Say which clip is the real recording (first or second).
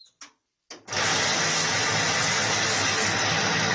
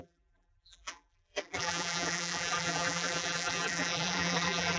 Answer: first